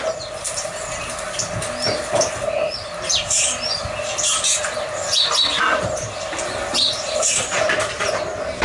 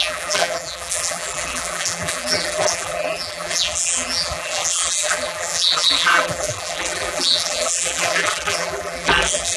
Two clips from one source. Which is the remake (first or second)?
second